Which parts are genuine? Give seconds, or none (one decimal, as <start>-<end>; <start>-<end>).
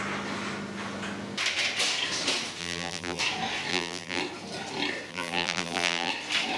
0.0-2.6; 3.2-3.7; 4.2-5.1; 6.1-6.6